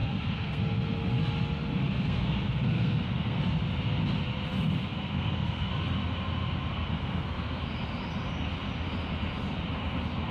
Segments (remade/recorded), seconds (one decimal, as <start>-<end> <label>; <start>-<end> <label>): 0.0-0.6 remade; 0.6-1.8 recorded; 1.8-3.4 remade; 3.4-4.8 recorded; 4.8-5.7 remade; 5.7-6.7 recorded; 6.7-7.6 remade; 7.6-10.3 recorded